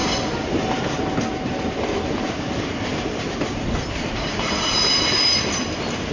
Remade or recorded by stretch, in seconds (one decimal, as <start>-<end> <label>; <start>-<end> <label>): 0.0-2.9 recorded; 2.9-4.7 remade; 4.7-6.1 recorded